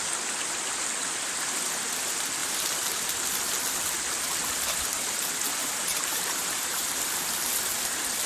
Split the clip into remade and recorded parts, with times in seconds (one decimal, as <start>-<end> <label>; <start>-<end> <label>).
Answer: 0.0-2.4 recorded; 2.4-3.2 remade; 3.2-5.6 recorded; 5.6-6.8 remade; 6.8-8.3 recorded